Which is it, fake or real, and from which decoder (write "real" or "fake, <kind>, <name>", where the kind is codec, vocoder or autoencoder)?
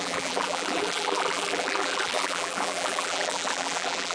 fake, vocoder, BigVGAN v2